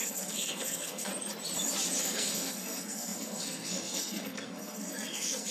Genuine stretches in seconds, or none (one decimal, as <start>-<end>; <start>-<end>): 1.1-2.0